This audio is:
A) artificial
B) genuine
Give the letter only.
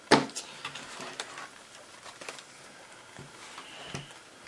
B